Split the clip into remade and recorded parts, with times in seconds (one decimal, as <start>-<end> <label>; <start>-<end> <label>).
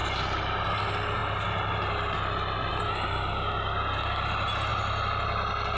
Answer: 0.0-0.7 remade; 0.7-1.2 recorded; 1.2-2.7 remade; 2.7-5.8 recorded